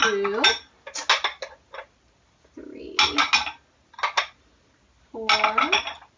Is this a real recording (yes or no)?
yes